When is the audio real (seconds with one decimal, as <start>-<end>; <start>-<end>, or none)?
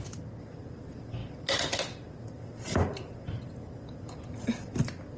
0.0-5.2